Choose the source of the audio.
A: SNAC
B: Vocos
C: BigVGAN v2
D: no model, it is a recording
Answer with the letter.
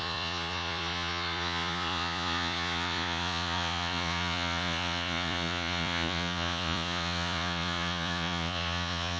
B